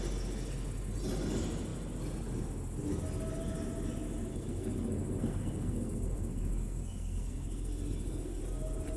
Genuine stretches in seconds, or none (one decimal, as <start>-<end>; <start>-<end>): 0.0-4.3; 8.4-9.0